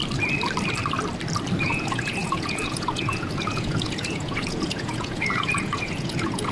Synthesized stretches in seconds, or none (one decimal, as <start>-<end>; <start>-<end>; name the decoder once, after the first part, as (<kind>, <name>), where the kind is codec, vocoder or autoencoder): 1.6-6.5 (vocoder, Vocos)